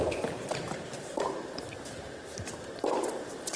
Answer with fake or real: fake